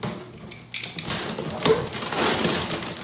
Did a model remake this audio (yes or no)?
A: no